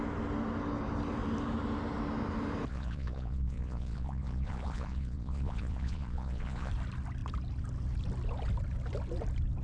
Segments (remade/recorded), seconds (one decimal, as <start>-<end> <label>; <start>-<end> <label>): 0.0-2.7 recorded; 2.7-6.7 remade; 6.7-9.6 recorded